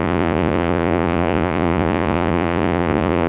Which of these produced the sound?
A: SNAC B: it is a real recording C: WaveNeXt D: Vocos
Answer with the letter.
D